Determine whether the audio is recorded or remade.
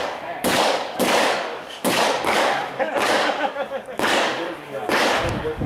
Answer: remade